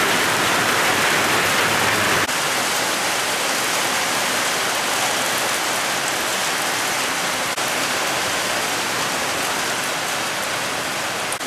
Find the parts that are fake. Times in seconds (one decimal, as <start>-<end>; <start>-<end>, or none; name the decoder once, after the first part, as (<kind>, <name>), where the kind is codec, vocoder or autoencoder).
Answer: none